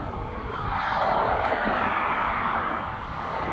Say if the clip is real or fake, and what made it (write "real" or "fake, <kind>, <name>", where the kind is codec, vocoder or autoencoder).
fake, codec, DAC